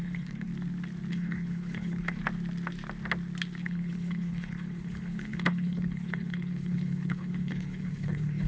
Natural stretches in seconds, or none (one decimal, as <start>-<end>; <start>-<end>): 0.5-1.1; 2.2-3.6